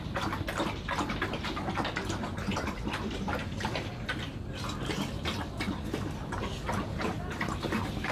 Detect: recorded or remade recorded